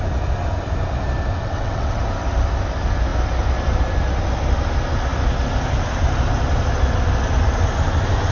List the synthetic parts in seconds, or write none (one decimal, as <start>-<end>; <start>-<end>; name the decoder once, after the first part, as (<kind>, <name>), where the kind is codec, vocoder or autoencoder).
1.4-2.0 (vocoder, WaveNeXt)